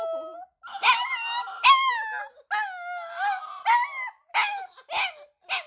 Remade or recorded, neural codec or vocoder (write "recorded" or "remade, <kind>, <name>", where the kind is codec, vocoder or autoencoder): recorded